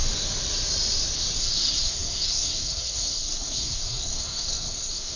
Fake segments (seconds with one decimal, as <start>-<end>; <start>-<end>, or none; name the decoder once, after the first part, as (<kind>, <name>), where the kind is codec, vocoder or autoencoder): 1.4-5.2 (codec, SNAC)